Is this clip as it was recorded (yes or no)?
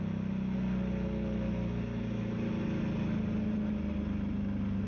yes